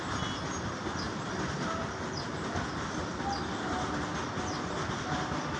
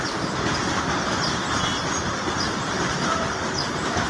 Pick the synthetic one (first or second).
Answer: second